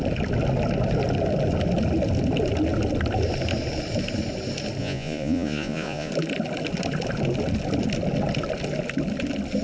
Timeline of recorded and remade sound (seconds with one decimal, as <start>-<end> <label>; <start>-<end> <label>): 0.0-4.8 recorded; 4.8-6.1 remade; 6.1-9.6 recorded